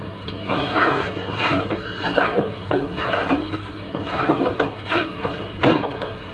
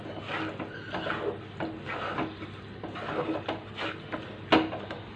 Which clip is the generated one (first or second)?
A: first